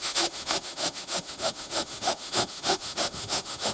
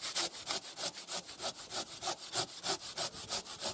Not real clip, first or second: first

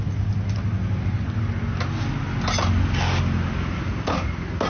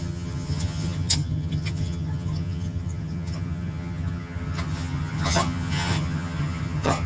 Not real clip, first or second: second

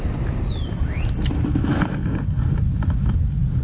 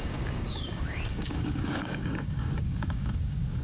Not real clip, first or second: second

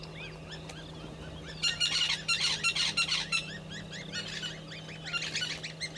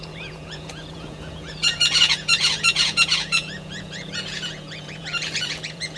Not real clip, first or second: second